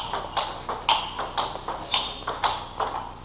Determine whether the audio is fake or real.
real